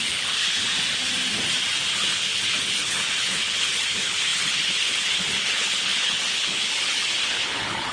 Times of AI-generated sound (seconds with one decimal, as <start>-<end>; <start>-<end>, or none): 0.0-0.7; 1.9-7.9